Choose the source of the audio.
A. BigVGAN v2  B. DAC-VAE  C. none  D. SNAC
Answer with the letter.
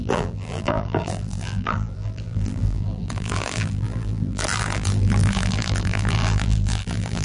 A